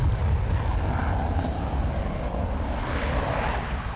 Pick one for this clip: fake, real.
real